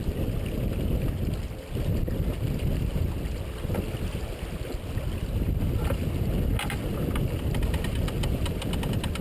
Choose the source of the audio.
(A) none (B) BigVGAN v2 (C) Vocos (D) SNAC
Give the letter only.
A